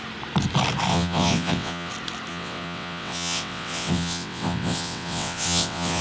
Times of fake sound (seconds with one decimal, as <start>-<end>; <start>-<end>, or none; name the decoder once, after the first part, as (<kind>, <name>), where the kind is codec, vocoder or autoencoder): 0.9-1.9 (vocoder, WaveNeXt); 2.3-6.0